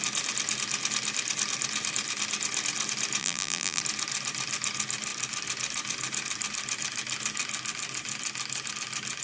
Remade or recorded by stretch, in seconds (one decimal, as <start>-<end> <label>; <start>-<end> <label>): 0.0-3.2 recorded; 3.2-3.8 remade; 3.8-9.2 recorded